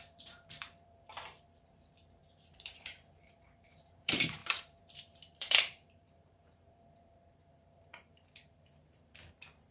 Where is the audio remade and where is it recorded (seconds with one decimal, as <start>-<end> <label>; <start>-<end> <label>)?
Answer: 0.0-9.7 remade

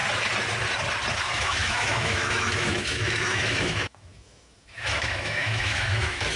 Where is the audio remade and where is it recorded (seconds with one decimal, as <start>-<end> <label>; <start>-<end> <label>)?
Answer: 0.0-1.2 recorded; 1.2-6.4 remade